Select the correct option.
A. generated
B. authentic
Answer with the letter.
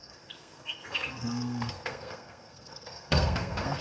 A